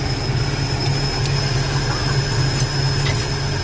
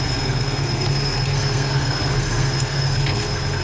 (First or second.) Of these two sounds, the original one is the first